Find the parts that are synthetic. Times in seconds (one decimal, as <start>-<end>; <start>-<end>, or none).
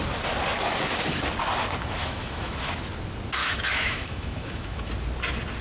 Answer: 2.0-2.8; 3.4-4.9